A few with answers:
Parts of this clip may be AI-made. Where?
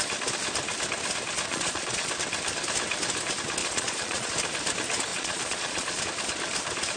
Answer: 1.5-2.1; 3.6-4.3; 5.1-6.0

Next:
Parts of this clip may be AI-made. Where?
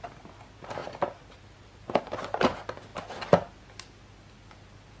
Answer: none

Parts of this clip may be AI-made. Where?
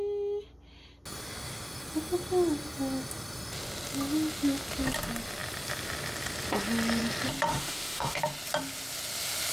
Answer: 7.5-8.2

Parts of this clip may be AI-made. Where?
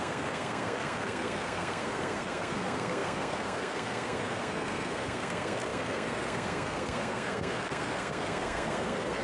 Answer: 0.0-9.2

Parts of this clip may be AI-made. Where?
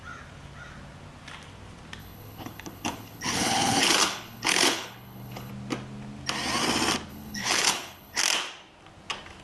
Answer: 2.0-5.5; 7.1-8.2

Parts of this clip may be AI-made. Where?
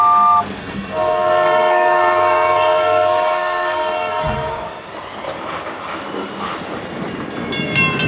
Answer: 0.6-4.5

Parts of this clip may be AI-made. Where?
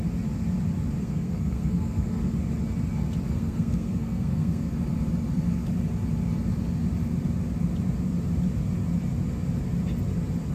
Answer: 1.0-2.2; 3.3-4.7